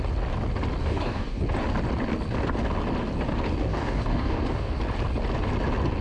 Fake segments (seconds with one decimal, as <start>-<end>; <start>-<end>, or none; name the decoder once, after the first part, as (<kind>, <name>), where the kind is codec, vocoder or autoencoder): 0.8-1.4 (codec, DAC); 3.7-4.8